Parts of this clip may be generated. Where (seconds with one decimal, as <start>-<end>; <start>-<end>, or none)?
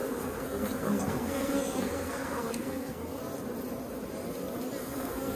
0.0-3.2; 4.8-5.4